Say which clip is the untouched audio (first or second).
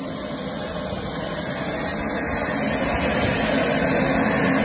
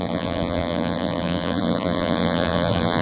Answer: first